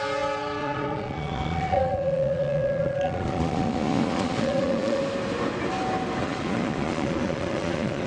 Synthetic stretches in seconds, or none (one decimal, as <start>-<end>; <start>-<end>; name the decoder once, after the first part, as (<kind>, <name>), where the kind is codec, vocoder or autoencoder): 0.6-5.0 (vocoder, Vocos); 6.2-8.1